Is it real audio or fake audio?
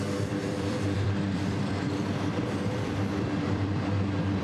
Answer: fake